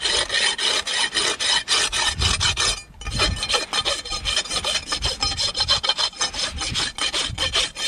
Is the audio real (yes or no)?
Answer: yes